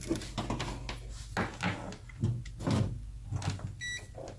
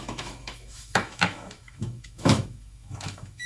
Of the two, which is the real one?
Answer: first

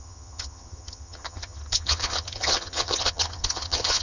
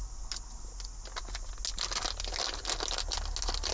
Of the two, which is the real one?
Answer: second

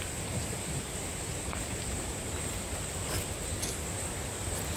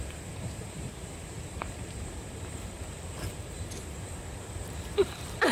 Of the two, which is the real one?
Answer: first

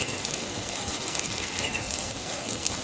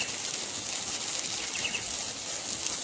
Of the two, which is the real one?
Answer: second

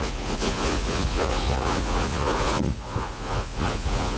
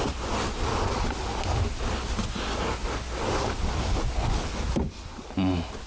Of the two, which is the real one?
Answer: second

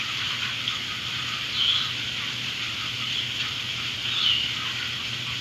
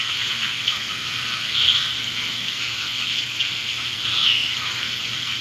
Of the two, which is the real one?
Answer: first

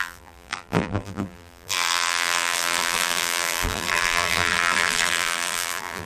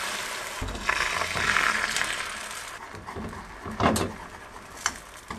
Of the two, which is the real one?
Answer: second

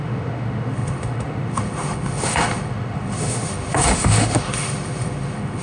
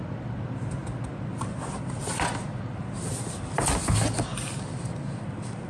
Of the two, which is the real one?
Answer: second